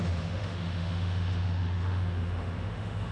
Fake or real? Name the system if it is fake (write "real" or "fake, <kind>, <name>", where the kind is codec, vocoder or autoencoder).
fake, autoencoder, DAC-VAE